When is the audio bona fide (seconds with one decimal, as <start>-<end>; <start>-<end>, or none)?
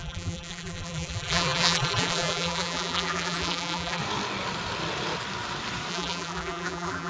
4.0-5.9